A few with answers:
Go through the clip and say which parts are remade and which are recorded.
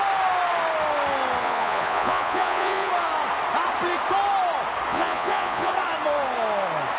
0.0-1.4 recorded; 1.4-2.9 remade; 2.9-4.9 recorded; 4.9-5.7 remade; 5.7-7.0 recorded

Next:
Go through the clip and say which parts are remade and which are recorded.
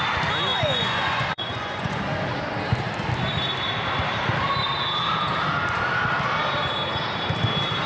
0.0-0.5 recorded; 0.5-2.0 remade; 2.0-7.9 recorded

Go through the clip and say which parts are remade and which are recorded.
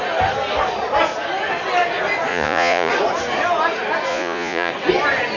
0.0-2.3 recorded; 2.3-2.9 remade; 2.9-4.1 recorded; 4.1-4.7 remade; 4.7-5.4 recorded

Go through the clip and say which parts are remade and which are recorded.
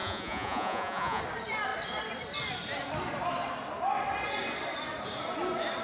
0.0-1.2 remade; 1.2-5.8 recorded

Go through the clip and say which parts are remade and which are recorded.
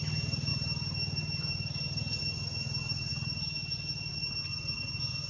0.0-5.3 recorded